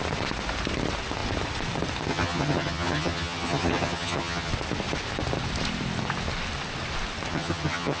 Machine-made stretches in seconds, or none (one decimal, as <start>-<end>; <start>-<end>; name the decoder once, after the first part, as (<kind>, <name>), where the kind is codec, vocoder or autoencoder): 2.1-4.5 (vocoder, HiFi-GAN); 7.3-8.0

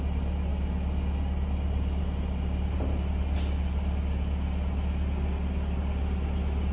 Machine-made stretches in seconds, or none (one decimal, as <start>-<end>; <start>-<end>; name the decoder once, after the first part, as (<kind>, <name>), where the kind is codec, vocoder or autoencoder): none

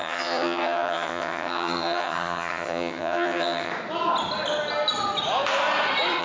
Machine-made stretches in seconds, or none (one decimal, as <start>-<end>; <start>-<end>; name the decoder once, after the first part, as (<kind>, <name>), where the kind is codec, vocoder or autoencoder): 0.0-3.7 (vocoder, HiFi-GAN)

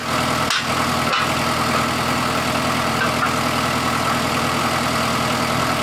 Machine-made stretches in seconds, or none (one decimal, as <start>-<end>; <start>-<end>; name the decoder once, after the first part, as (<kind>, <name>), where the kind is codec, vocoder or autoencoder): none